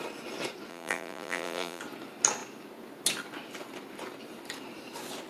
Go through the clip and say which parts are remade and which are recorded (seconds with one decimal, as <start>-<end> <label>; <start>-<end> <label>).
0.0-0.7 recorded; 0.7-1.8 remade; 1.8-5.3 recorded